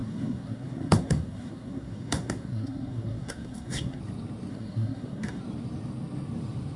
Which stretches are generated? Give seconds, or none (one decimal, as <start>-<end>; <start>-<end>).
0.0-4.0; 4.5-5.4